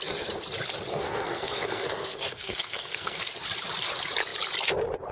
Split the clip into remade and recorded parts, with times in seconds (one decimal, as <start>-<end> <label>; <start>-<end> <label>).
0.0-0.9 recorded; 0.9-3.2 remade; 3.2-5.1 recorded